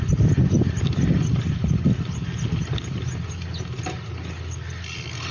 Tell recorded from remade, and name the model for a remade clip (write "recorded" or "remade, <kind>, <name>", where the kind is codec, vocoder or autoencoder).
recorded